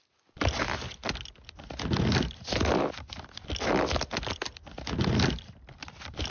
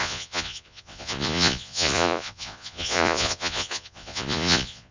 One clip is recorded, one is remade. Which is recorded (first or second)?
first